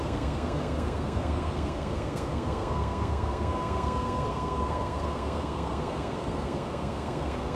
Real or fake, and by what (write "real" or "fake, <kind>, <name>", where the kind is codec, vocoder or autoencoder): fake, codec, SNAC